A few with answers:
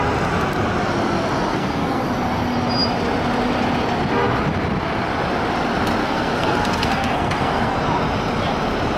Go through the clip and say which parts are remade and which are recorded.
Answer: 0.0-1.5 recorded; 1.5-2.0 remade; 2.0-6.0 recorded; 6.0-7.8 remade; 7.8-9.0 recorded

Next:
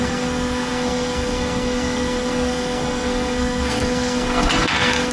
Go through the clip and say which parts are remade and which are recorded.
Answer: 0.0-5.1 remade

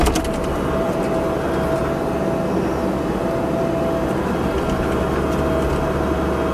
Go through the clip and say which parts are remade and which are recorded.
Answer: 0.0-6.5 recorded

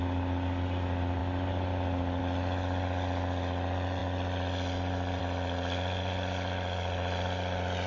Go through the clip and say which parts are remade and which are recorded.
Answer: 0.0-7.9 recorded

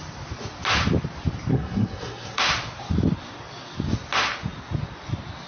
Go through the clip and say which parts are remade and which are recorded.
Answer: 0.0-1.5 recorded; 1.5-2.4 remade; 2.4-5.5 recorded

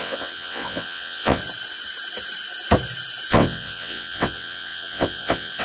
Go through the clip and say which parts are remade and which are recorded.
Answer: 0.0-1.4 remade; 1.4-3.3 recorded; 3.3-5.6 remade